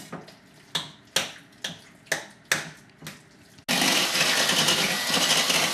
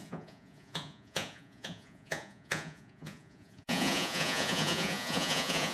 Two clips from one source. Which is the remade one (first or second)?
second